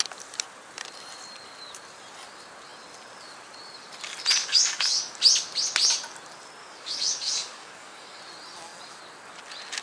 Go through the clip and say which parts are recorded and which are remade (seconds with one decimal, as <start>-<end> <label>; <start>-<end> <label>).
0.0-4.4 recorded; 4.4-5.0 remade; 5.0-6.6 recorded; 6.6-8.2 remade; 8.2-9.8 recorded